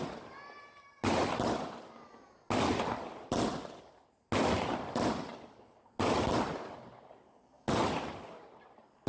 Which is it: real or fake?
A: real